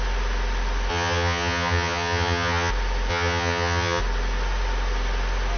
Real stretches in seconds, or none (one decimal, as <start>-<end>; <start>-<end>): 0.0-0.9; 2.7-3.1; 4.0-5.6